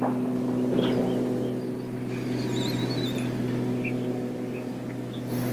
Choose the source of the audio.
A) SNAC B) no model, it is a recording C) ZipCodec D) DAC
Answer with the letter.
B